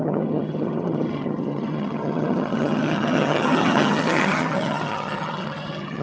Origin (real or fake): fake